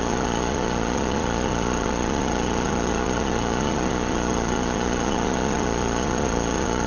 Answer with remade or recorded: remade